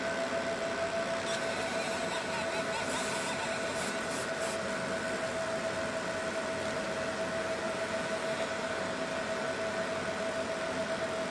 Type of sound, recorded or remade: recorded